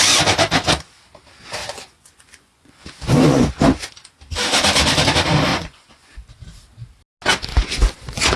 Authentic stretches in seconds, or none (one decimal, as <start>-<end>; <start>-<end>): 0.0-1.6; 3.5-5.5; 6.1-7.5

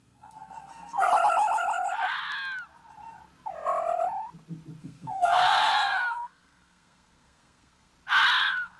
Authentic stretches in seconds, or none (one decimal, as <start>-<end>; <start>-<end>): 1.1-4.8; 7.9-8.4